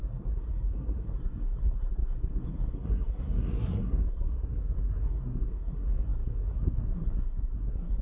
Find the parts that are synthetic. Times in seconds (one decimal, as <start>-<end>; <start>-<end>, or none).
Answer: 0.0-8.0